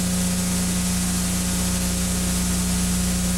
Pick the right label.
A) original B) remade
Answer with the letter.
A